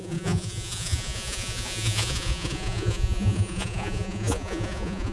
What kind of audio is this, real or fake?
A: fake